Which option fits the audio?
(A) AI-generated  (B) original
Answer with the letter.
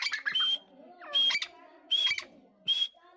B